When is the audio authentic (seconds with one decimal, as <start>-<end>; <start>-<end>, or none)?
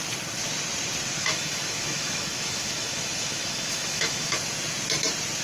0.0-1.2; 4.4-5.4